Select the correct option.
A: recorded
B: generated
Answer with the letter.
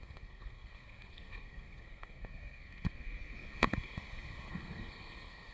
B